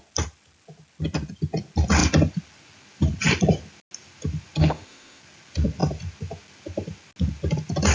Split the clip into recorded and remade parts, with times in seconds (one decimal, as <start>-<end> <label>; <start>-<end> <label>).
0.0-4.6 recorded; 4.6-5.2 remade; 5.2-7.9 recorded